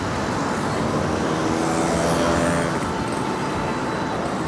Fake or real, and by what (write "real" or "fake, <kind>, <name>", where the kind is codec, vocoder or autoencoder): real